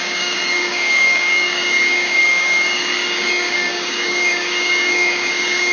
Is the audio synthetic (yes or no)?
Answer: yes